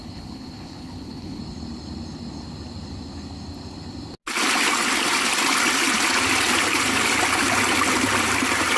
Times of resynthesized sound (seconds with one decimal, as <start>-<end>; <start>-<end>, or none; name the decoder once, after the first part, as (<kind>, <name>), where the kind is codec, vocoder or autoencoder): 0.0-1.4 (codec, HILCodec)

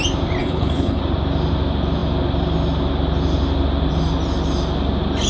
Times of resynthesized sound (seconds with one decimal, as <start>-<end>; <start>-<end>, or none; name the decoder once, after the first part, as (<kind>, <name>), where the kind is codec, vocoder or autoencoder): 0.4-1.0 (codec, HILCodec)

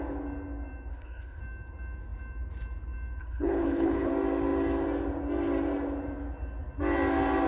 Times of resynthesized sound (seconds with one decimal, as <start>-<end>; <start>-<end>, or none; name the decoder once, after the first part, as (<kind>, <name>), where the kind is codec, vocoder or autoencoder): 0.9-1.4 (codec, HILCodec); 3.2-4.1

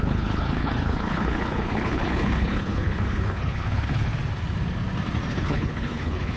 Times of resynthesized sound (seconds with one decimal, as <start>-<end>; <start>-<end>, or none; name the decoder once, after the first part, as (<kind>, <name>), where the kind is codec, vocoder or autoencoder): 0.0-4.1 (codec, HILCodec); 5.3-6.4

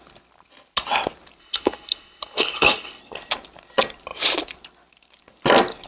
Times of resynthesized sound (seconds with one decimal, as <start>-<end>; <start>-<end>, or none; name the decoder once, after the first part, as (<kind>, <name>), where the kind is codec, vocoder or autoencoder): 1.4-3.0 (codec, HILCodec)

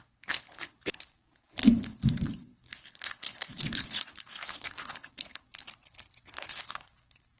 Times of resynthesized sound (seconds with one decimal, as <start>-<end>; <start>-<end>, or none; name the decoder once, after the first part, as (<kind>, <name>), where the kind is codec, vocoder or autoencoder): 0.0-7.4 (codec, HILCodec)

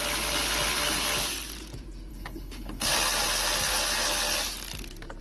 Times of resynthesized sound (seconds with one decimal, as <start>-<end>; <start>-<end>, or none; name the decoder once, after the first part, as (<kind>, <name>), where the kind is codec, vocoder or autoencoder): 2.1-2.9 (codec, HILCodec)

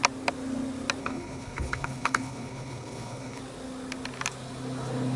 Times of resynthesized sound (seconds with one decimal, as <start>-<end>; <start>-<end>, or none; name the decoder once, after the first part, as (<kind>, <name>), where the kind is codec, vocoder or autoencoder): 1.0-3.4 (codec, HILCodec)